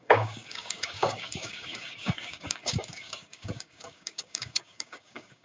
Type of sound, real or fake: fake